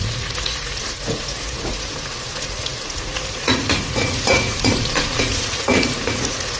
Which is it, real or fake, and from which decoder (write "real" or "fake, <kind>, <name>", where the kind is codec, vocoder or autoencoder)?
fake, vocoder, Vocos